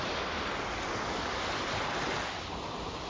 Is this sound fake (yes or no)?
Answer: no